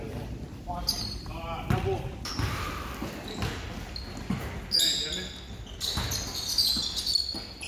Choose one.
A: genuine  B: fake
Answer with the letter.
A